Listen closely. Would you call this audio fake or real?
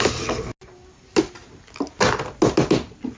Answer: real